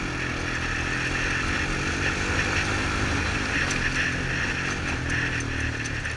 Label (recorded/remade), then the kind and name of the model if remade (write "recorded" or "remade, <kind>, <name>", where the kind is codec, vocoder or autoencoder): recorded